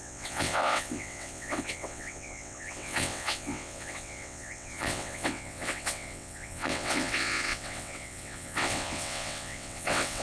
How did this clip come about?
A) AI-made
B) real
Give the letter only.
A